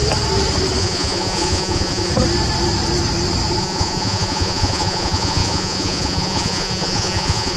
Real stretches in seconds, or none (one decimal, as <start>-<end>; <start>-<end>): 0.0-0.8; 2.1-3.6